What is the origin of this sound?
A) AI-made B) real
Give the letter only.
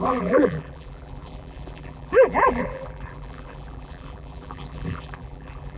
A